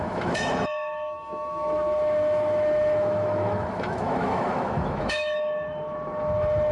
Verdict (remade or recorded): remade